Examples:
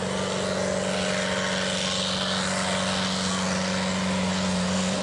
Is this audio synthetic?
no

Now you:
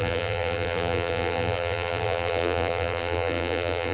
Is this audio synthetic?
yes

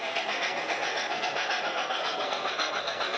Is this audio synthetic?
yes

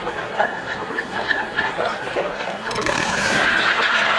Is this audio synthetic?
yes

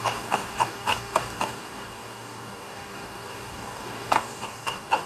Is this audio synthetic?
yes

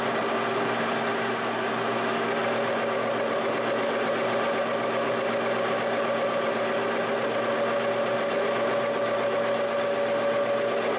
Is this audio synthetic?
no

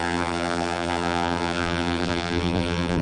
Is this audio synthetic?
yes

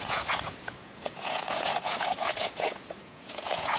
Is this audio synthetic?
yes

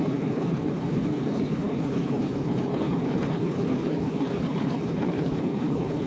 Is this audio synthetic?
yes